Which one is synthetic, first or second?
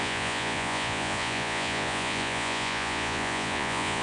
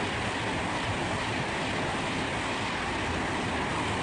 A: first